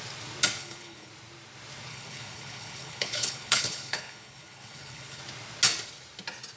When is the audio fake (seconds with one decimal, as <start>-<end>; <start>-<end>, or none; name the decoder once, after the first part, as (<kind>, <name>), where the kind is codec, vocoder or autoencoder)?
0.6-1.1 (codec, HILCodec); 1.9-5.2